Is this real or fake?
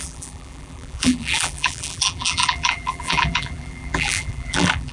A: fake